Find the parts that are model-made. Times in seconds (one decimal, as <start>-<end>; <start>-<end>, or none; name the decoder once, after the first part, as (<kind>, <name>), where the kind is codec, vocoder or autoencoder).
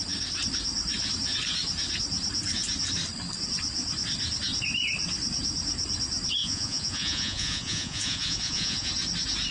6.4-8.9 (vocoder, Vocos)